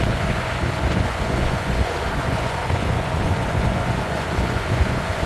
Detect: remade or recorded remade